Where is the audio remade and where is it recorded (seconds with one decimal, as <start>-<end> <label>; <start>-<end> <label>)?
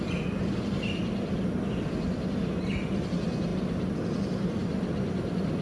0.0-5.6 recorded